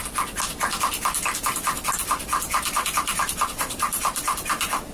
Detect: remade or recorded recorded